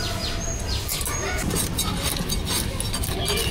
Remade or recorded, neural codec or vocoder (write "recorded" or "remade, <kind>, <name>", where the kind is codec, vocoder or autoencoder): recorded